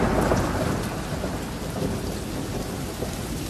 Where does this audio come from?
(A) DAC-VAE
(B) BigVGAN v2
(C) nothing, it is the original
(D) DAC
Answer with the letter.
C